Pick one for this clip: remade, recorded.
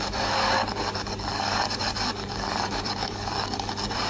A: remade